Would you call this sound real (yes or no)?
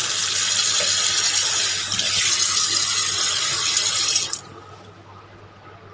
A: yes